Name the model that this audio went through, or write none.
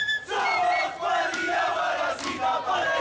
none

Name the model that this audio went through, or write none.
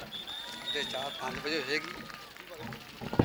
vocoder, BigVGAN v2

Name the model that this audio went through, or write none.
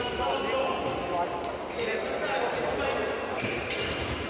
none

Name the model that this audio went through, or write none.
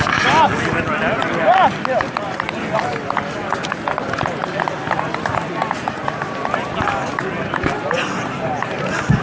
none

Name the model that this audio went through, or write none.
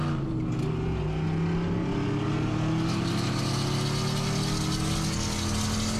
none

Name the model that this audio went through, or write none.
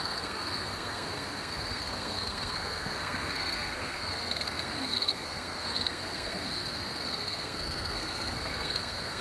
codec, SNAC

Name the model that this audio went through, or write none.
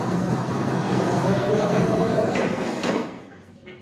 codec, SNAC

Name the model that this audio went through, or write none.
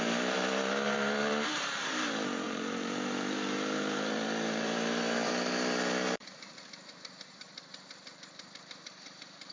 vocoder, BigVGAN v2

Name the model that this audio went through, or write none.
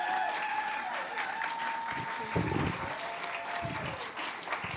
none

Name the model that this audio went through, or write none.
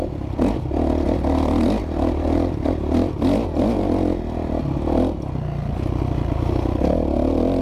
none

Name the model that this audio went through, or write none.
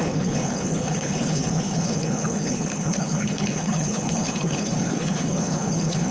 codec, HILCodec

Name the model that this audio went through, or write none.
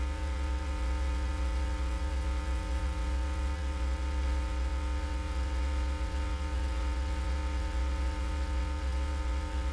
vocoder, WaveNeXt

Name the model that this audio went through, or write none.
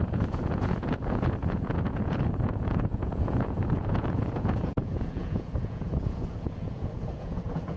vocoder, Vocos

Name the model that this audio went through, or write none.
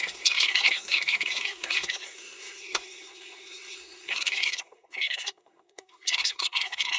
codec, SNAC